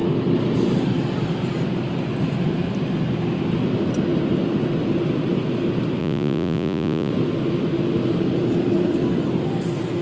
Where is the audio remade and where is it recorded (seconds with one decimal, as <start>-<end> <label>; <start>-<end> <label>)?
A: 0.0-6.0 recorded; 6.0-7.1 remade; 7.1-10.0 recorded